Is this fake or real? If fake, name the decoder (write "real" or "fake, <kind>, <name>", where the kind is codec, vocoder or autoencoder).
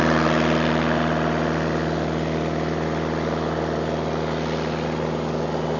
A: real